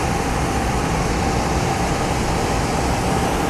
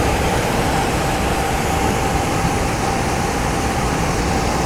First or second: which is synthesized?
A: second